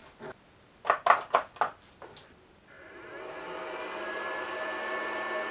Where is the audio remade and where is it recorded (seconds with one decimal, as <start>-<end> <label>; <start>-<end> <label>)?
0.0-5.5 recorded